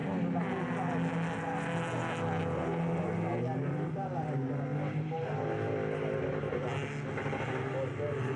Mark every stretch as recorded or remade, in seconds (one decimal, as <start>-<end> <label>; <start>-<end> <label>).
0.0-8.4 recorded